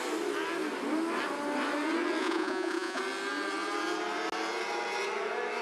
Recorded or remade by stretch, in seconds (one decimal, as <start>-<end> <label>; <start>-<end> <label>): 0.0-2.2 recorded; 2.2-3.0 remade; 3.0-5.6 recorded